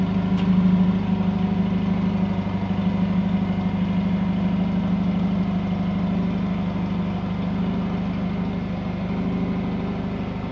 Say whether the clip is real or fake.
real